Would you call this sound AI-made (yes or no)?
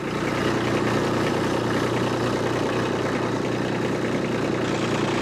no